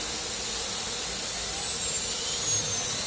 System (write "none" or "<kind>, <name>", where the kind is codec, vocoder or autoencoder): none